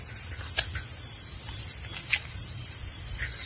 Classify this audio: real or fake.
real